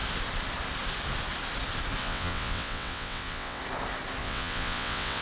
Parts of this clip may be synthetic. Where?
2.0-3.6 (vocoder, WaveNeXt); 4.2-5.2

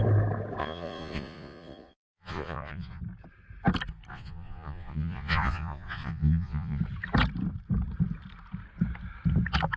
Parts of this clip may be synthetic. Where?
0.6-3.0 (vocoder, Vocos); 4.1-6.8

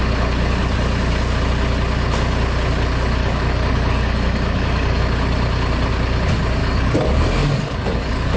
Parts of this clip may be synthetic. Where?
3.2-5.0 (codec, DAC); 6.6-8.4

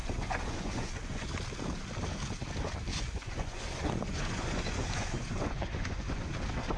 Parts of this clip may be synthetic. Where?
0.0-1.3 (vocoder, Vocos); 2.9-6.3

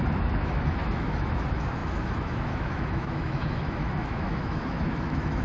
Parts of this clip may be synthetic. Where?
0.0-5.4 (autoencoder, DAC-VAE)

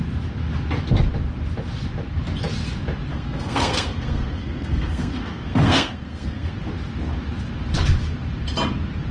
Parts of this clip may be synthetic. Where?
3.1-6.5 (codec, SNAC)

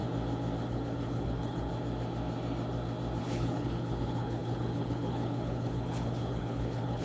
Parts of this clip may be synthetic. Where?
0.7-1.7 (codec, HILCodec); 3.2-7.0